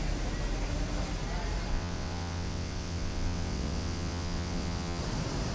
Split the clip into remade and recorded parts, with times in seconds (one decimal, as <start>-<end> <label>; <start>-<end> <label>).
0.0-1.7 recorded; 1.7-5.0 remade; 5.0-5.5 recorded